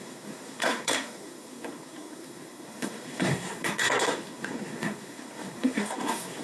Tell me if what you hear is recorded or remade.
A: remade